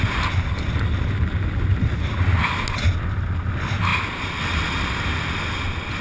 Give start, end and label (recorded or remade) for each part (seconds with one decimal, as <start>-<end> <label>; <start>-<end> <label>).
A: 0.0-6.0 recorded